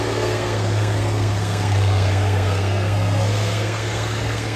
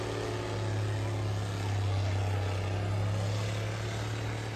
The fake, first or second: first